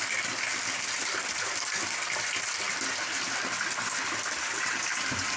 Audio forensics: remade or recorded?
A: recorded